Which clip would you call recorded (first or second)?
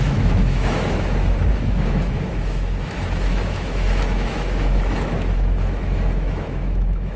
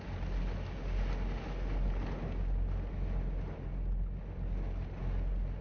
second